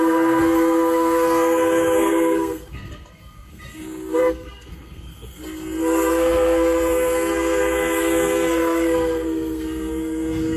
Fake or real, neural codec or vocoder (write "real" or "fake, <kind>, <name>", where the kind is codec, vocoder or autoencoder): fake, codec, SNAC